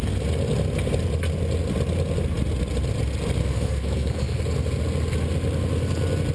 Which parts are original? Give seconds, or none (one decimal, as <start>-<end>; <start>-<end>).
0.0-3.4; 4.4-6.3